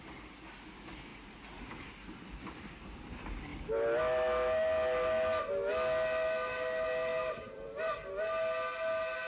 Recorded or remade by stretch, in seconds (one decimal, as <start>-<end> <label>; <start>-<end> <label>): 0.0-1.1 recorded; 1.1-2.2 remade; 2.2-7.1 recorded; 7.1-7.9 remade; 7.9-9.3 recorded

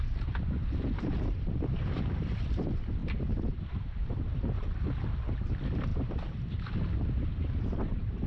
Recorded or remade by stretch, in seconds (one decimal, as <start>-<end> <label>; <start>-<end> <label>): 0.0-8.3 remade